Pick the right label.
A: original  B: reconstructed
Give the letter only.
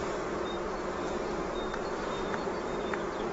A